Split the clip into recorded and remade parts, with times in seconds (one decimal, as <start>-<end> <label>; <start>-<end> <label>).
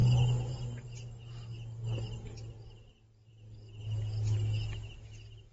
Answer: 0.0-5.5 recorded